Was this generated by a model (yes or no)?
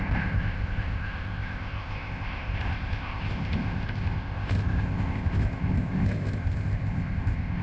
yes